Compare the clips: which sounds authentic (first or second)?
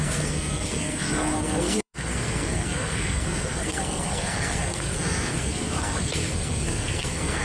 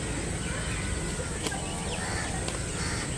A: second